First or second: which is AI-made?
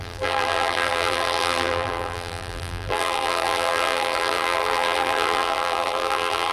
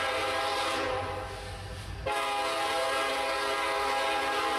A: first